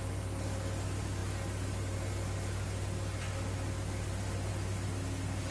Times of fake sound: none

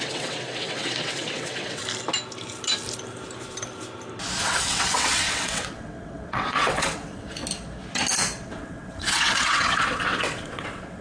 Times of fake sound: 0.0-1.8 (vocoder, WaveNeXt); 4.4-7.4; 8.4-11.0